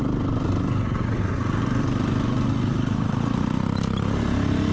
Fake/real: real